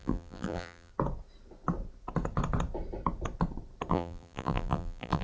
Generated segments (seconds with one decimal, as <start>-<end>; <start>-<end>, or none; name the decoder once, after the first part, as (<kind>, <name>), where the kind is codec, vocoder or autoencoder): 0.0-0.9 (vocoder, BigVGAN v2); 3.9-5.2